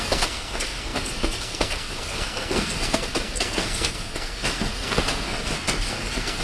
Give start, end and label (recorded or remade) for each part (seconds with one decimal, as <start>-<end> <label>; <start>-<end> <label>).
0.0-6.4 remade